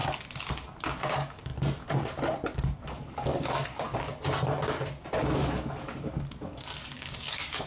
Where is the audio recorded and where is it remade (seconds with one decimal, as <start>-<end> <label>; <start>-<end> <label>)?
0.0-1.1 recorded; 1.1-1.5 remade; 1.5-2.8 recorded; 2.8-4.1 remade; 4.1-5.2 recorded; 5.2-7.7 remade

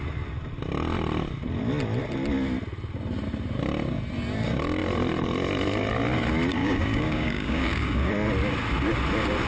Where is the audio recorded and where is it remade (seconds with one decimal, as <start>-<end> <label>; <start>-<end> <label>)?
0.0-6.6 recorded; 6.6-8.1 remade; 8.1-9.5 recorded